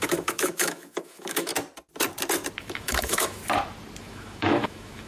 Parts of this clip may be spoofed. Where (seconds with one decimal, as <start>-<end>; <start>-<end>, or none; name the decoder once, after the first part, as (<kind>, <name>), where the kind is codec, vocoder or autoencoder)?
0.0-1.5 (autoencoder, DAC-VAE); 2.6-3.4; 4.0-5.1